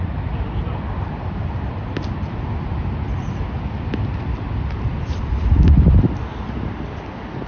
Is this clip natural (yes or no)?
yes